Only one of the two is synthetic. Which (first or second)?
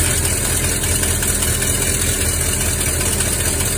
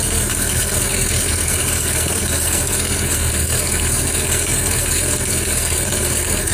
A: second